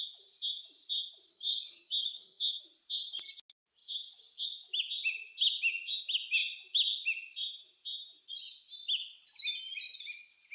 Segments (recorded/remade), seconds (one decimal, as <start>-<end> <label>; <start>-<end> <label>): 0.0-1.3 recorded; 1.3-2.6 remade; 2.6-10.5 recorded